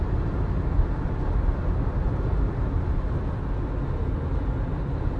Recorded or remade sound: recorded